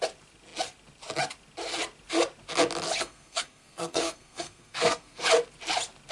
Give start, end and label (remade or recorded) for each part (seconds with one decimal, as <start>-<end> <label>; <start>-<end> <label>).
0.0-3.0 recorded; 3.0-5.2 remade; 5.2-6.1 recorded